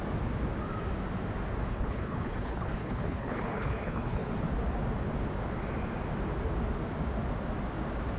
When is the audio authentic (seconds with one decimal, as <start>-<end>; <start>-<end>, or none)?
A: 0.0-1.7; 4.3-8.2

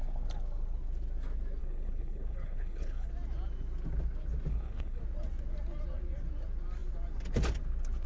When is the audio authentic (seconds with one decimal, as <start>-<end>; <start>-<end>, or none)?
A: 0.0-1.6; 3.1-4.5; 5.0-8.1

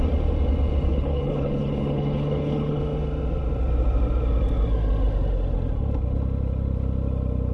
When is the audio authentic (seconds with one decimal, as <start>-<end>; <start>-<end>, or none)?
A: 0.0-0.9; 2.8-7.5